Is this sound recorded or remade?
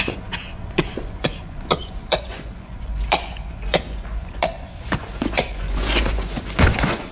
remade